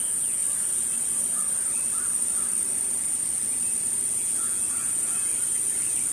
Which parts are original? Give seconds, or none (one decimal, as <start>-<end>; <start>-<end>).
0.4-4.1; 5.3-6.1